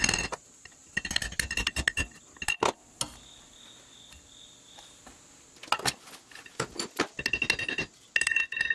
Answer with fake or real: real